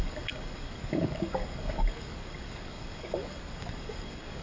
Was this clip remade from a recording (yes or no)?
yes